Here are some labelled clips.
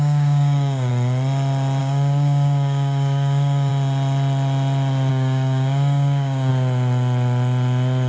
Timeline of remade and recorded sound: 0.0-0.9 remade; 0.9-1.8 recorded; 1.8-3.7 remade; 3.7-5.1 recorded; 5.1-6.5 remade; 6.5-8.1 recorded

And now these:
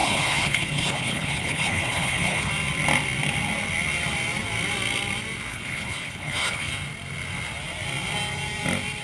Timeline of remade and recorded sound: 0.0-2.5 remade; 2.5-5.5 recorded; 5.5-6.7 remade; 6.7-9.0 recorded